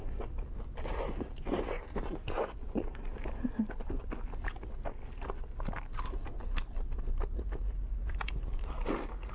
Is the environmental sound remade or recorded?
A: recorded